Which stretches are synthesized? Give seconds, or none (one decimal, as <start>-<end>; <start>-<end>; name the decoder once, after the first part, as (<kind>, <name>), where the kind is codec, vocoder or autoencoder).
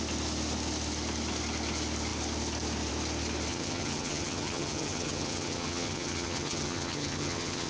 3.5-7.7 (vocoder, HiFi-GAN)